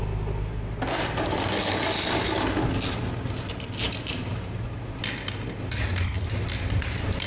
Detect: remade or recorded recorded